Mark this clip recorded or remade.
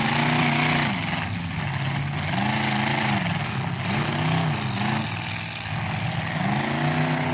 recorded